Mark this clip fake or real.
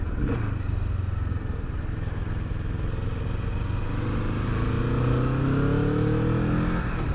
real